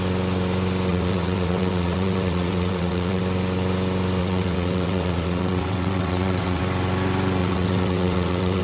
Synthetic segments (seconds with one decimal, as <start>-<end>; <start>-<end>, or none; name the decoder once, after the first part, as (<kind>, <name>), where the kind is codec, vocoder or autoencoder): 0.9-3.2 (vocoder, WaveNeXt); 4.2-6.6; 7.4-8.6